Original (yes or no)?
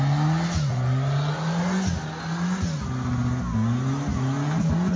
yes